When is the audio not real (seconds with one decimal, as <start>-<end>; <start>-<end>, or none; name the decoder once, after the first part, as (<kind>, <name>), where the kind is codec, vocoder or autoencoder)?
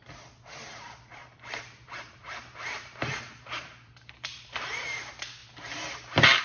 1.2-5.0 (vocoder, BigVGAN v2)